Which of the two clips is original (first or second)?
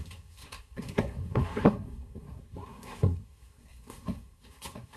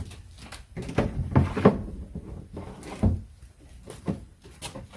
second